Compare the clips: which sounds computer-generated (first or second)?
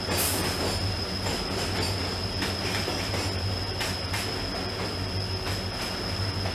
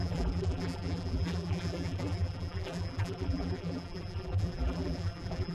second